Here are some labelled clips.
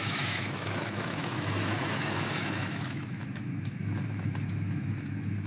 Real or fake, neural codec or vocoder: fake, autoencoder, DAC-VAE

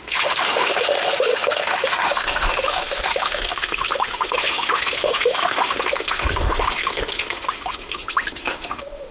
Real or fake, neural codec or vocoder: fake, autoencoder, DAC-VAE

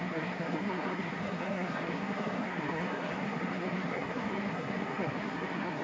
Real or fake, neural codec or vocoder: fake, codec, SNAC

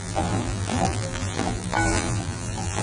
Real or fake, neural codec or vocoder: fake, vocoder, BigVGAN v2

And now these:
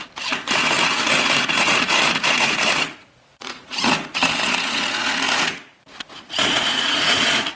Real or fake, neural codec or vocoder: fake, vocoder, Vocos